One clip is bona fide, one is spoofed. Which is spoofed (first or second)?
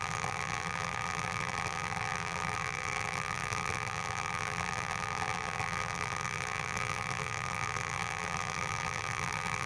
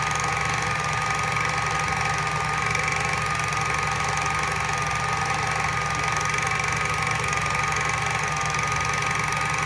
first